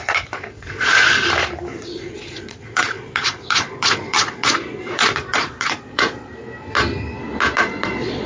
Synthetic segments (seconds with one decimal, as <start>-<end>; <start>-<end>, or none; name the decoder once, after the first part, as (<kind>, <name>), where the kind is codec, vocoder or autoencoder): 0.0-0.9 (vocoder, Vocos); 1.8-6.3; 7.6-8.3

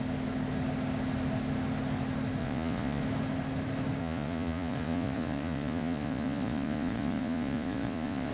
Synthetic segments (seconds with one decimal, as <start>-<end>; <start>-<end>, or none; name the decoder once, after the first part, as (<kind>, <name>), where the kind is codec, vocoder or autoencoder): 2.4-3.0 (vocoder, Vocos); 4.0-8.3

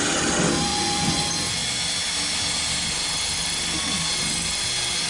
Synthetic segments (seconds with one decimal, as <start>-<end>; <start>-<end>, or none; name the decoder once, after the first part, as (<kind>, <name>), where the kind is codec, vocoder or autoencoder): 0.7-1.2 (vocoder, Vocos)

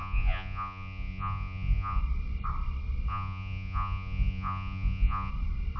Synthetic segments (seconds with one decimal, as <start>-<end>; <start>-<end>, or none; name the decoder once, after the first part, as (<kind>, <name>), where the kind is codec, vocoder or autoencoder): 0.0-2.0 (vocoder, Vocos); 3.1-5.3

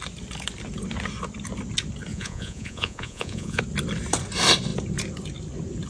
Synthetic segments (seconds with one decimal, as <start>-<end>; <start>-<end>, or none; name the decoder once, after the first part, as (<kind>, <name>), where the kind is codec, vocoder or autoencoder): 2.1-3.6 (vocoder, Vocos)

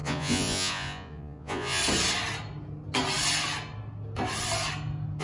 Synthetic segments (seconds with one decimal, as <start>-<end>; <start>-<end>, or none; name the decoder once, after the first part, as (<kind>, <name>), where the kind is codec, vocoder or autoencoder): 0.0-1.8 (vocoder, Vocos)